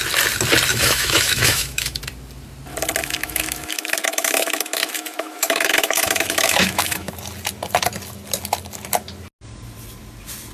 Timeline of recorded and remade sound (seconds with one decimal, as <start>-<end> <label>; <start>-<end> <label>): 0.0-0.7 recorded; 0.7-2.0 remade; 2.0-3.0 recorded; 3.0-7.1 remade; 7.1-10.5 recorded